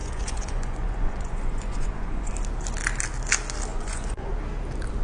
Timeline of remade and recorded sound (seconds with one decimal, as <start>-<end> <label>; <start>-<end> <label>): 0.0-2.3 remade; 2.3-3.7 recorded; 3.7-4.3 remade; 4.3-5.0 recorded